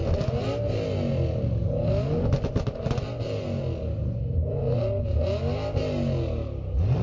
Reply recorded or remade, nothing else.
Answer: recorded